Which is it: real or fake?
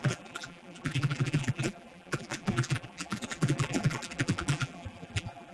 fake